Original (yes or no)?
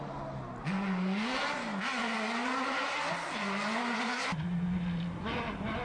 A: yes